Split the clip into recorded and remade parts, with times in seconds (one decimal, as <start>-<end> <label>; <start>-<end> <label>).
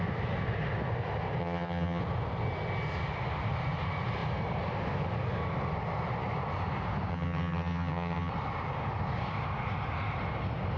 0.0-1.4 recorded; 1.4-2.0 remade; 2.0-7.1 recorded; 7.1-8.3 remade; 8.3-10.8 recorded